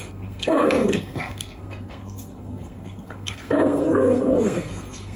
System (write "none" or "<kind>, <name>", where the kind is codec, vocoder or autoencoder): codec, SNAC